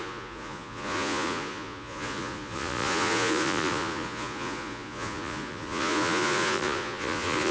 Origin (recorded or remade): remade